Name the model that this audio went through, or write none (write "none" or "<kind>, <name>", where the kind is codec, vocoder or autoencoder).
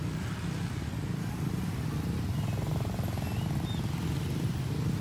none